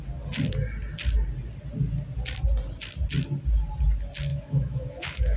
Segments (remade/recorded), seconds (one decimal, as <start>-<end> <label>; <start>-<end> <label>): 0.0-4.3 recorded; 4.3-5.4 remade